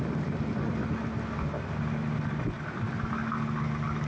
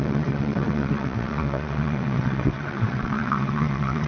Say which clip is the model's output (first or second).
second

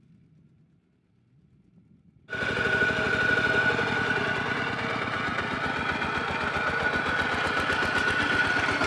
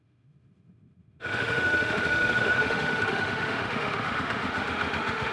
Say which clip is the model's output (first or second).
second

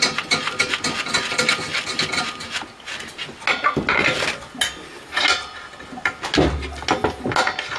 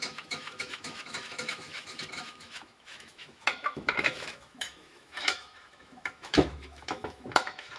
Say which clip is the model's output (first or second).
second